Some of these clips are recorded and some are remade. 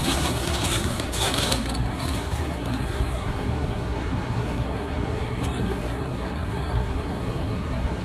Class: remade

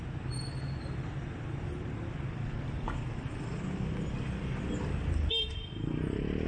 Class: recorded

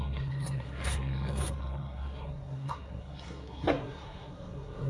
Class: remade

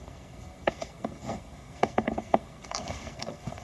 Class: remade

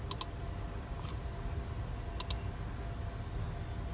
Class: recorded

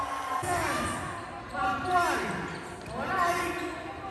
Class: recorded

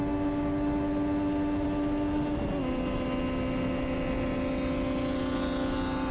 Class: recorded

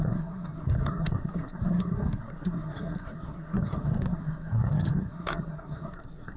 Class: remade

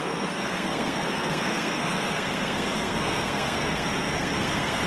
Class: remade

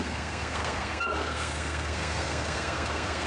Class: remade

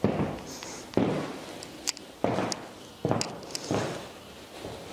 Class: recorded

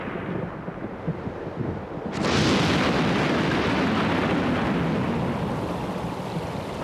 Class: recorded